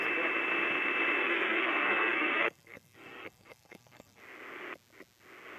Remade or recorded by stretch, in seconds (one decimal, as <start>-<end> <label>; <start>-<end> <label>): 0.0-1.2 recorded; 1.2-4.2 remade; 4.2-5.6 recorded